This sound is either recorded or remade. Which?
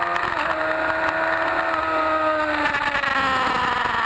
recorded